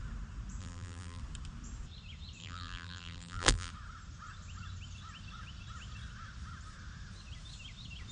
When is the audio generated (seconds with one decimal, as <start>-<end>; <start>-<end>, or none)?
0.6-1.2; 2.4-3.7